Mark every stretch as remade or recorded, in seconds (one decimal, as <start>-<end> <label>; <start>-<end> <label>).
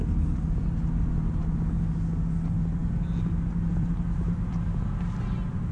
0.0-5.7 recorded